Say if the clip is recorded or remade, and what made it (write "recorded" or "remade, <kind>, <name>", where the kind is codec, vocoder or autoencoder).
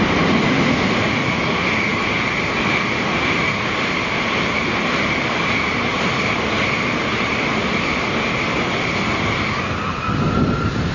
recorded